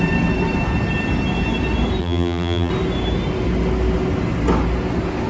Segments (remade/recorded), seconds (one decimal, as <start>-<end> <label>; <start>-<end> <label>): 0.0-2.0 recorded; 2.0-2.7 remade; 2.7-5.3 recorded